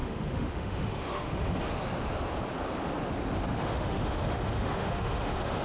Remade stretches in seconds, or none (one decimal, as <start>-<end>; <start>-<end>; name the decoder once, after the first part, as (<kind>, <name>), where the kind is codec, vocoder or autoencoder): 0.0-1.7 (autoencoder, DAC-VAE); 3.5-5.6